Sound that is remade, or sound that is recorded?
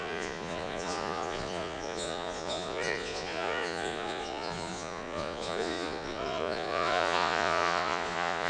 remade